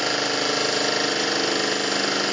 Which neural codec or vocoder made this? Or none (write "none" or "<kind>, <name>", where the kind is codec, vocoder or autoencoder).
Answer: none